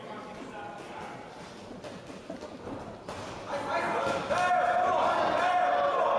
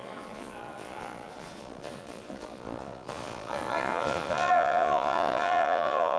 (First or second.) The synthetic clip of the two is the second